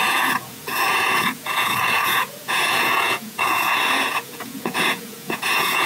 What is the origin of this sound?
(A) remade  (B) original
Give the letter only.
A